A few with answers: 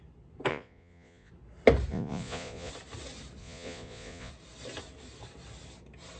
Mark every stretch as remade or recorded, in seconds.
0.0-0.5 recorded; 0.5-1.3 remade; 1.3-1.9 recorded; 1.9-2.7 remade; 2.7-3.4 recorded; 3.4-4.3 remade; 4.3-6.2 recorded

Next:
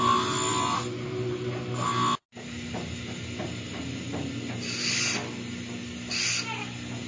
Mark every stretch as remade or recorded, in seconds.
0.0-7.1 recorded

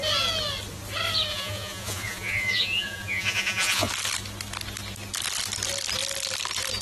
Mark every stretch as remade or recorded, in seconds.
0.0-1.3 recorded; 1.3-3.9 remade; 3.9-6.8 recorded

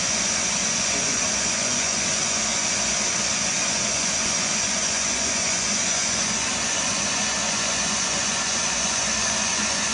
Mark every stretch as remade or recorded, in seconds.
0.0-9.9 remade

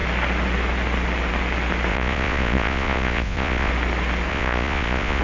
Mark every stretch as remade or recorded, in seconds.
0.0-1.9 recorded; 1.9-3.7 remade; 3.7-4.3 recorded; 4.3-5.2 remade